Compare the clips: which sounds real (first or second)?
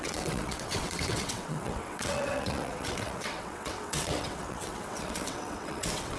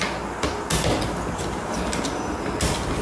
second